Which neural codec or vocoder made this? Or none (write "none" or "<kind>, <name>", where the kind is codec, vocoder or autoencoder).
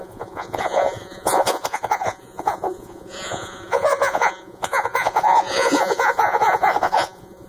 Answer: vocoder, Vocos